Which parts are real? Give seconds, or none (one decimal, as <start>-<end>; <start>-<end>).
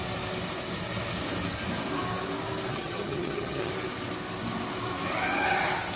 0.0-2.7; 3.7-6.0